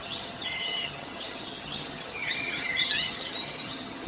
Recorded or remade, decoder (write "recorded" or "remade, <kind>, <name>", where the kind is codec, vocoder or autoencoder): remade, vocoder, HiFi-GAN